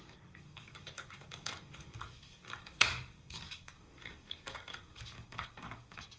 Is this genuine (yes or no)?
no